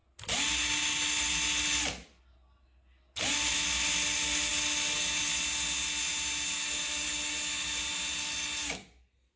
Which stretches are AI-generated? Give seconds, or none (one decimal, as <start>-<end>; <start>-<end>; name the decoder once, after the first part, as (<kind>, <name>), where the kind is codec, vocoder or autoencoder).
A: none